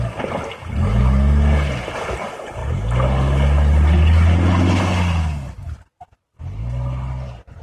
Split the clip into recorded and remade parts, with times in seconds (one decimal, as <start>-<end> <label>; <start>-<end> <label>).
0.0-7.6 recorded